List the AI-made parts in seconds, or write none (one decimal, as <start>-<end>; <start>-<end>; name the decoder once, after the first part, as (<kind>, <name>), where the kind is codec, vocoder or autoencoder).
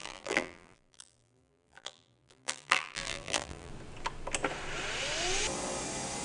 0.0-3.7 (vocoder, BigVGAN v2)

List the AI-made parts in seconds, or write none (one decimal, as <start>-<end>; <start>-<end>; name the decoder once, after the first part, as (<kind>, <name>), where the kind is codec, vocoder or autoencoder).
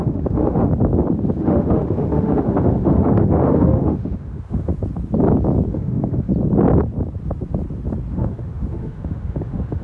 0.0-0.7 (autoencoder, DAC-VAE); 1.4-4.7; 5.7-6.3; 8.1-9.8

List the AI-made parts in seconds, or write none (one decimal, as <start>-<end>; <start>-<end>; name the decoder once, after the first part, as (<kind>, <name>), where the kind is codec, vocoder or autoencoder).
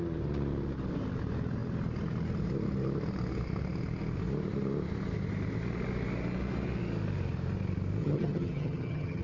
8.0-9.2 (vocoder, HiFi-GAN)